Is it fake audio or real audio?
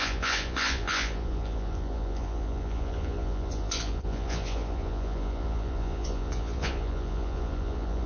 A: fake